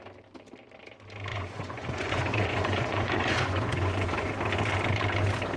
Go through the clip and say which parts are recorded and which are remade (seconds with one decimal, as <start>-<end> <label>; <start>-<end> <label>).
0.0-1.3 recorded; 1.3-4.3 remade; 4.3-5.6 recorded